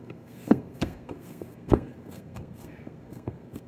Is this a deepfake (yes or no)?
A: yes